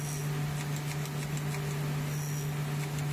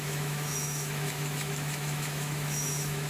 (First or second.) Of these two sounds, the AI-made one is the second